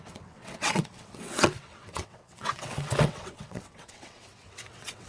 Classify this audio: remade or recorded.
remade